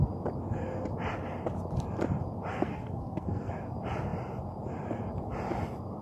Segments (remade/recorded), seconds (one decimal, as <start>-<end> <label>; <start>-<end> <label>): 0.0-2.5 recorded; 2.5-3.5 remade; 3.5-6.0 recorded